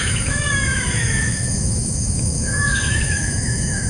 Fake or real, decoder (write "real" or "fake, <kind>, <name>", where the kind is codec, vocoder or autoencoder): fake, autoencoder, DAC-VAE